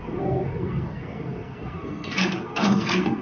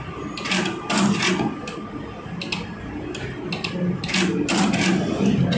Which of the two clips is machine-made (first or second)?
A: first